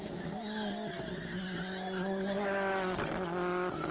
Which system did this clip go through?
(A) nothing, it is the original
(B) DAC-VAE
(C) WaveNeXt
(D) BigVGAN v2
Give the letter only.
A